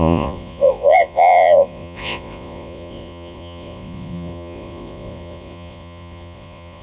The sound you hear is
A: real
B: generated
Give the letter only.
B